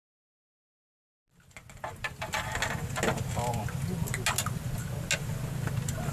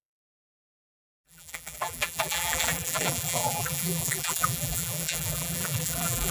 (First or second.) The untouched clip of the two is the first